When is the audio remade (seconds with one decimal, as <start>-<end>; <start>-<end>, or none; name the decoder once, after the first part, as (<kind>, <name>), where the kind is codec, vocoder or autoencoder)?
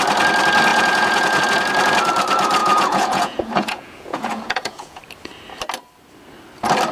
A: 0.7-1.4 (vocoder, Vocos); 2.6-5.0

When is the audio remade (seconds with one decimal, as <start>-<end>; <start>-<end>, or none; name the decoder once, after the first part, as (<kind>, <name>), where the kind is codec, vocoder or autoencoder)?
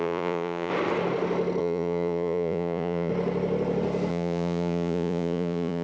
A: 0.0-0.7 (vocoder, Vocos); 1.6-3.1; 4.1-5.8